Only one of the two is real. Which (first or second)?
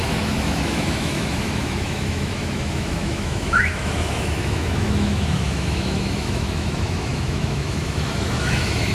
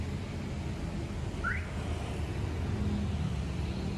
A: second